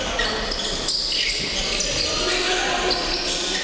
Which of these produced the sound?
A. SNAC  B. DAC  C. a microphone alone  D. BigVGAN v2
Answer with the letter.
C